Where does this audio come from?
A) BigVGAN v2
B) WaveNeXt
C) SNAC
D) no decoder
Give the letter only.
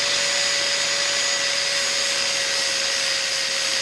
D